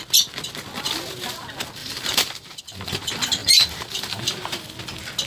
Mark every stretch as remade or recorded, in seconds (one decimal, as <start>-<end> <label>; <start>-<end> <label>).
0.0-1.8 recorded; 1.8-2.6 remade; 2.6-3.4 recorded; 3.4-4.6 remade; 4.6-5.3 recorded